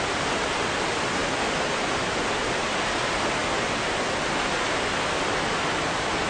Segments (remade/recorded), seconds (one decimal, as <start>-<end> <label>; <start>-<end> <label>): 0.0-6.3 recorded